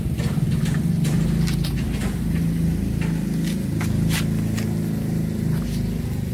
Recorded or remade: recorded